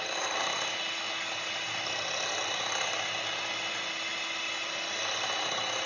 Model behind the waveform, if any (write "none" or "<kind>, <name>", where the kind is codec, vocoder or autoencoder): none